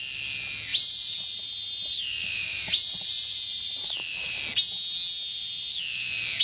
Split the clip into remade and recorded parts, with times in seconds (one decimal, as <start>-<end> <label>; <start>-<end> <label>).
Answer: 0.0-0.7 recorded; 0.7-4.4 remade; 4.4-5.3 recorded; 5.3-6.4 remade